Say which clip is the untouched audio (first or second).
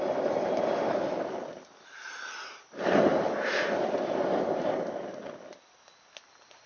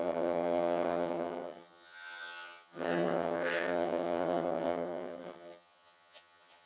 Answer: first